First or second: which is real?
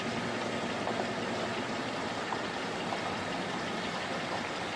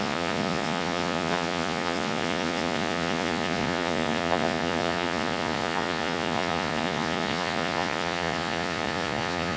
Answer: first